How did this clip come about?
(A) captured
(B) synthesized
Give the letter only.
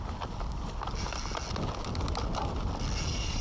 A